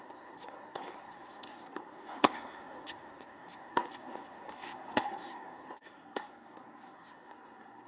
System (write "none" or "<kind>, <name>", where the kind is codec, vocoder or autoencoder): codec, SNAC